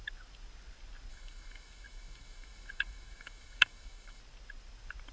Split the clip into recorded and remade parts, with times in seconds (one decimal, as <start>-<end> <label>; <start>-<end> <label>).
0.0-1.1 recorded; 1.1-4.2 remade; 4.2-5.1 recorded